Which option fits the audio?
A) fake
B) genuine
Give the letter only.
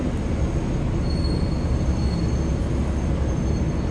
B